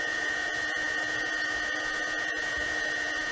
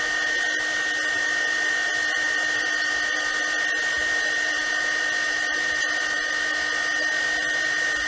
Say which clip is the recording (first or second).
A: second